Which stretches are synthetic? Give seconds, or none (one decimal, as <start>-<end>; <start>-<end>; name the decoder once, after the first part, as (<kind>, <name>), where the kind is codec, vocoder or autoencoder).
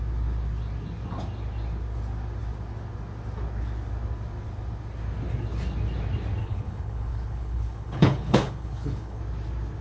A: 6.4-9.2 (codec, HILCodec)